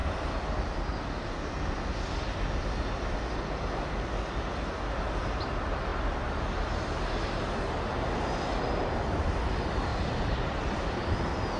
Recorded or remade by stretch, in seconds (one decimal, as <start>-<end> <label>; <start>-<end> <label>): 0.0-0.5 remade; 0.5-9.9 recorded; 9.9-10.9 remade; 10.9-11.6 recorded